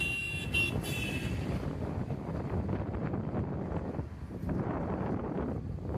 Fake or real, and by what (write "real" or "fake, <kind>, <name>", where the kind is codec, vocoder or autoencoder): fake, vocoder, BigVGAN v2